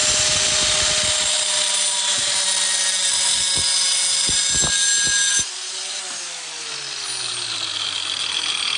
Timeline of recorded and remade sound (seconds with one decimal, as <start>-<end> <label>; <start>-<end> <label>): 0.0-8.8 recorded